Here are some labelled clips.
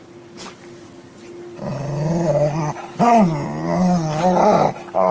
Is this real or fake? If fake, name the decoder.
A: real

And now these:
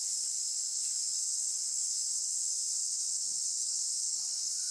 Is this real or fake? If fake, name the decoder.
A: fake, codec, HILCodec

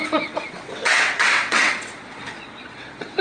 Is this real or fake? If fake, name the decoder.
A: fake, vocoder, WaveNeXt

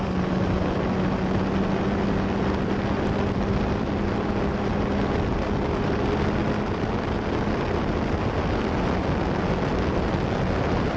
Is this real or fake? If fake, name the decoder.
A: real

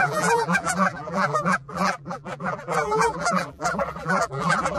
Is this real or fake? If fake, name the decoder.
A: fake, vocoder, BigVGAN v2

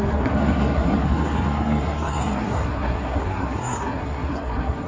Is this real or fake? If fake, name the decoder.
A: fake, codec, SNAC